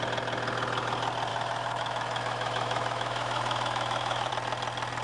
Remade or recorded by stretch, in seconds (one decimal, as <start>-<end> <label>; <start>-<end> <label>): 0.0-1.3 recorded; 1.3-4.3 remade; 4.3-5.0 recorded